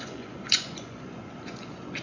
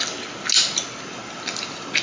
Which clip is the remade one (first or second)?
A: first